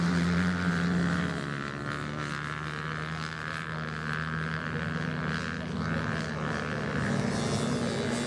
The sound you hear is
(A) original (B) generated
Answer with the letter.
A